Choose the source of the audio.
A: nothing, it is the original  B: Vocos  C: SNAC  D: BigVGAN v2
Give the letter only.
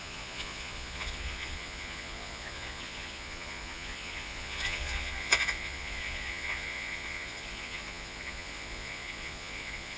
B